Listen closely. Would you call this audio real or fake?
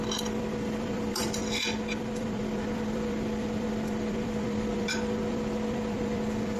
fake